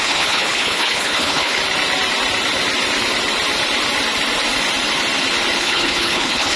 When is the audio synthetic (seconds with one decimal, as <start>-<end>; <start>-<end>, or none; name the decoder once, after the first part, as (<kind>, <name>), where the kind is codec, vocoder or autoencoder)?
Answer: 0.0-1.6 (codec, HILCodec); 5.6-6.6